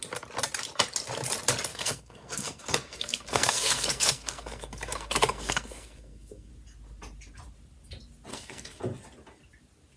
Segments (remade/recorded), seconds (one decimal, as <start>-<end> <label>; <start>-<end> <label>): 0.0-1.7 recorded; 1.7-6.5 remade; 6.5-8.3 recorded; 8.3-8.8 remade; 8.8-10.0 recorded